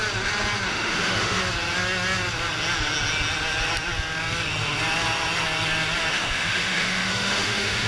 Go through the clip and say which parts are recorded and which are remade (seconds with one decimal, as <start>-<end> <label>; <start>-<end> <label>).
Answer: 0.0-0.7 recorded; 0.7-1.4 remade; 1.4-6.1 recorded; 6.1-7.9 remade